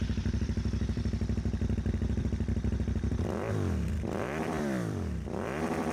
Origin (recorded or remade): remade